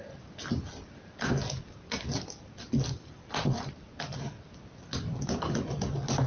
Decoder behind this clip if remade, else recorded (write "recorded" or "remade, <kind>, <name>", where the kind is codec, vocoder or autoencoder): recorded